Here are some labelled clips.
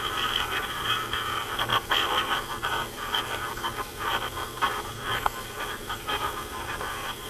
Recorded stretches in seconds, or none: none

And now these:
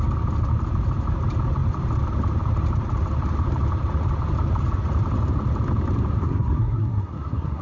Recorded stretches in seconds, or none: 0.0-6.2